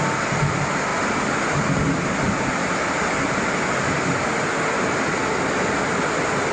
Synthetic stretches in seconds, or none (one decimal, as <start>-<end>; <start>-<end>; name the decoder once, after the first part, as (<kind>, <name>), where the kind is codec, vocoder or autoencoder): none